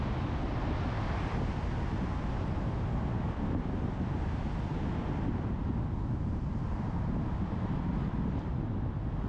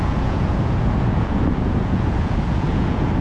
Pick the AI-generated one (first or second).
second